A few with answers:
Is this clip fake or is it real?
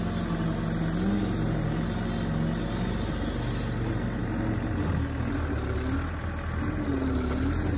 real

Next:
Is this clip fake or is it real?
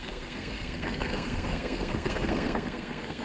fake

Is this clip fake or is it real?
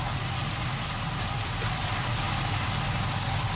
fake